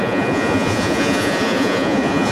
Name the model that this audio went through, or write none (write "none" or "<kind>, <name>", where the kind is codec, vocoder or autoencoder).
vocoder, Vocos